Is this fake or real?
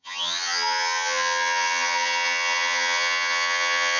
fake